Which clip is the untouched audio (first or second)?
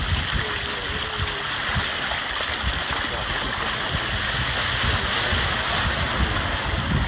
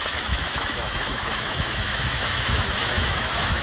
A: first